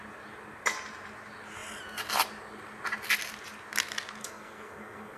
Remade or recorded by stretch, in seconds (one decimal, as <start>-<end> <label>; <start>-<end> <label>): 0.0-4.2 recorded; 4.2-5.2 remade